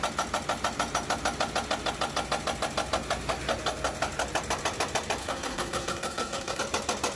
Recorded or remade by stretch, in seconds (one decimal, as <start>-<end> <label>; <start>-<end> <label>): 0.0-5.2 recorded; 5.2-6.6 remade; 6.6-7.2 recorded